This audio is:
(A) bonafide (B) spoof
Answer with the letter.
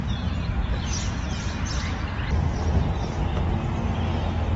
A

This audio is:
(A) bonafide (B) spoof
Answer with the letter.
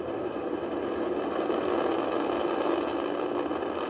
A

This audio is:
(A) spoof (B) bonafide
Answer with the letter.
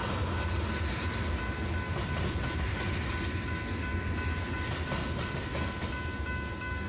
B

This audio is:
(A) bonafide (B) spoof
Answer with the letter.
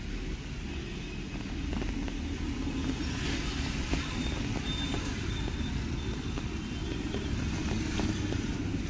A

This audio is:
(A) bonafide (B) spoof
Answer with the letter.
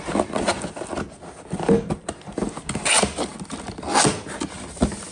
A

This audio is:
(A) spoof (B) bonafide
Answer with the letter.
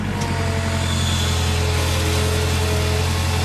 B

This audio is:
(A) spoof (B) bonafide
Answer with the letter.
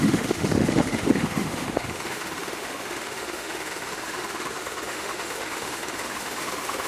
A